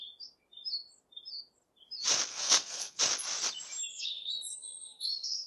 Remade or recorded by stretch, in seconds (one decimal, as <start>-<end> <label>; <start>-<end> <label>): 0.0-2.3 recorded; 2.3-3.0 remade; 3.0-3.9 recorded; 3.9-5.5 remade